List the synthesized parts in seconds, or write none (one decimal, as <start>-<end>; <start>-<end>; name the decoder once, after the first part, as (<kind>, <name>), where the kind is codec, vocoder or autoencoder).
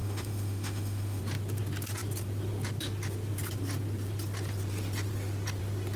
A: 0.0-1.2 (autoencoder, DAC-VAE)